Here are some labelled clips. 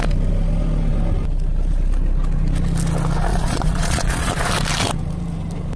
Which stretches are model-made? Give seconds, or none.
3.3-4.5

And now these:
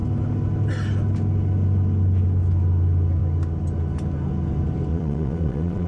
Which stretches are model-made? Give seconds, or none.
4.9-5.9

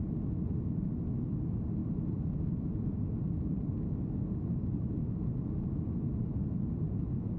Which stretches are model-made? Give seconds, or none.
none